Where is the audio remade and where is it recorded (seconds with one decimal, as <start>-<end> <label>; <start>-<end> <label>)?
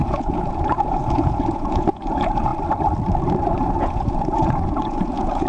0.0-2.5 remade; 2.5-3.8 recorded; 3.8-5.5 remade